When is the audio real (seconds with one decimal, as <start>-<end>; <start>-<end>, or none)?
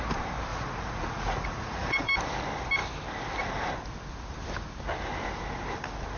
0.0-0.5; 2.1-6.2